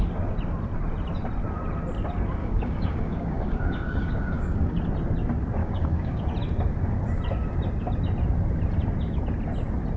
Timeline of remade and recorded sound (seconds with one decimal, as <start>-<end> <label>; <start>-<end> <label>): 0.0-2.4 recorded; 2.4-4.8 remade; 4.8-5.6 recorded; 5.6-6.2 remade; 6.2-10.0 recorded